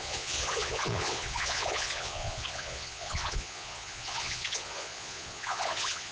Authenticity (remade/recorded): remade